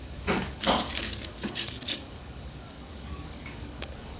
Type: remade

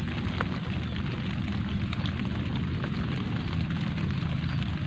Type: recorded